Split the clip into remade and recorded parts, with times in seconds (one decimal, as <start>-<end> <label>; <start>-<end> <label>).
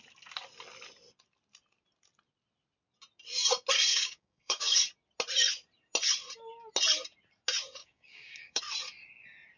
0.0-3.9 recorded; 3.9-4.8 remade; 4.8-7.8 recorded; 7.8-8.6 remade; 8.6-9.6 recorded